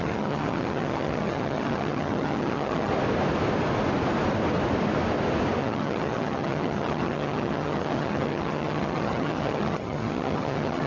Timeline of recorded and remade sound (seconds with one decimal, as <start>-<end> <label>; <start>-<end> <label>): 0.0-2.9 remade; 2.9-5.6 recorded; 5.6-10.9 remade